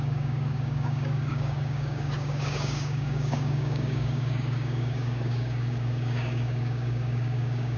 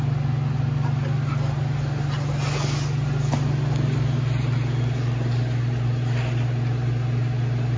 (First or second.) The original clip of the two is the second